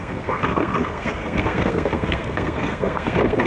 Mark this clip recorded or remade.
remade